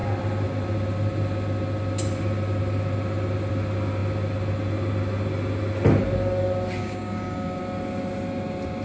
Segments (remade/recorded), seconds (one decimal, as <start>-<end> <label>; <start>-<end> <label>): 0.0-6.8 recorded; 6.8-7.6 remade; 7.6-8.8 recorded